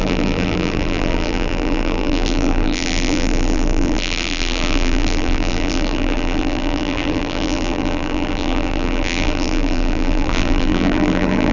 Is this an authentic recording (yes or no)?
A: no